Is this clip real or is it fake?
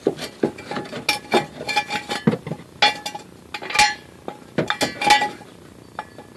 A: real